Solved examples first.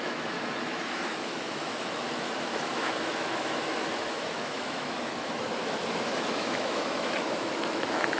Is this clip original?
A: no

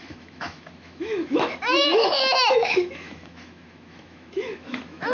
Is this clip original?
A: no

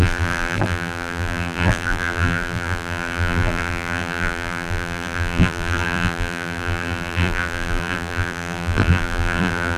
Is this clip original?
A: no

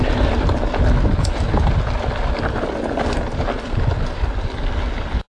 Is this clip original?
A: yes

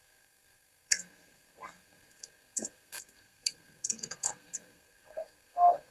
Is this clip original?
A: no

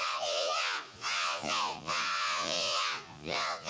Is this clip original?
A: no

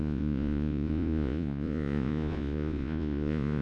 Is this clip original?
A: no